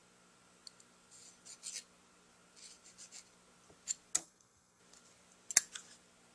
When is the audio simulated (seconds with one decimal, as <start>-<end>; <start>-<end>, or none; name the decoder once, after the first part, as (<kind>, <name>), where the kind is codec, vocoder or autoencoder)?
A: 4.2-4.8 (codec, SNAC)